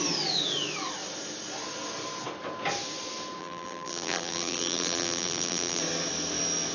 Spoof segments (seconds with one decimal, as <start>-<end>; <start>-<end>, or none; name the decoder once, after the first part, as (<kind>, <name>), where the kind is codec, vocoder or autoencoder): 3.4-5.8 (vocoder, BigVGAN v2)